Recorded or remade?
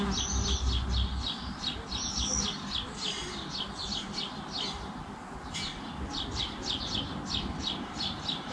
recorded